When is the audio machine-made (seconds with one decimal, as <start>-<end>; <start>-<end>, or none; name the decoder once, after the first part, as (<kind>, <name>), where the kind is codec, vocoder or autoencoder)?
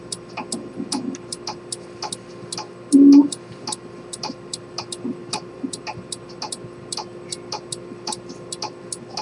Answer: 5.2-5.8 (vocoder, BigVGAN v2)